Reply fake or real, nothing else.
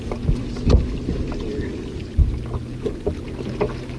real